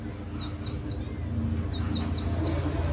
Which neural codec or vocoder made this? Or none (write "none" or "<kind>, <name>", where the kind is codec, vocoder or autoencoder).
none